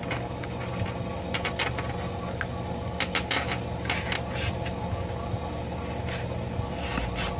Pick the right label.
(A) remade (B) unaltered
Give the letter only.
B